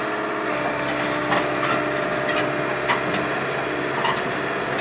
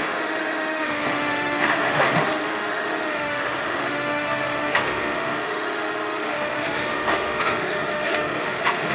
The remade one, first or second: second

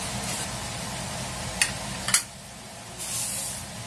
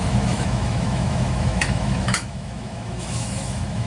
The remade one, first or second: second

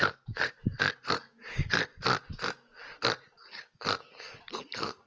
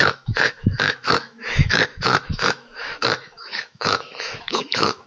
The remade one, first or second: second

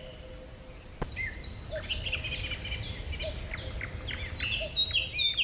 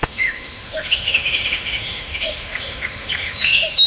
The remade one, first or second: second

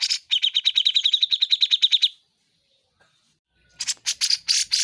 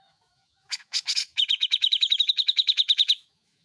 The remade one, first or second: second